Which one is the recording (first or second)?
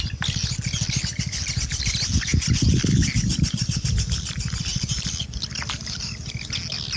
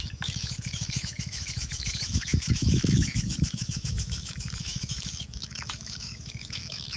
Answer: first